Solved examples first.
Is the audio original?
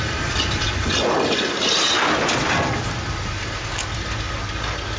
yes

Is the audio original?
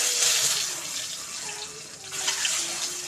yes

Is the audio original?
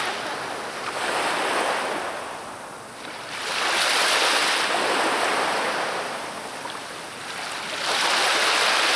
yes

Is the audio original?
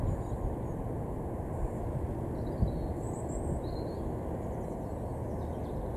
yes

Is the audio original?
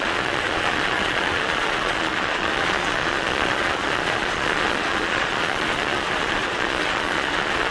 no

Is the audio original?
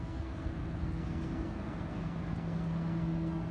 no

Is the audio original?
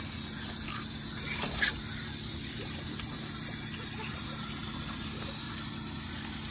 yes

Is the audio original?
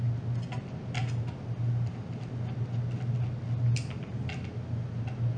yes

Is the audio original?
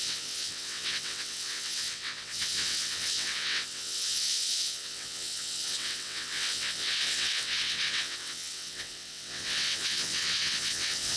no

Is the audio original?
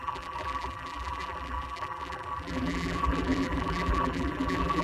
no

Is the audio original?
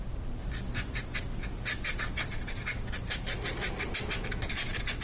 yes